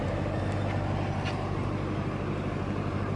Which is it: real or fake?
real